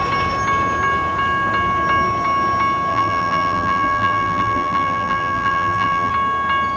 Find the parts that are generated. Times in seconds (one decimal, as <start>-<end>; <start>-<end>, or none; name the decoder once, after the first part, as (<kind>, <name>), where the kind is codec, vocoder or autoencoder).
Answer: 2.9-6.1 (vocoder, BigVGAN v2)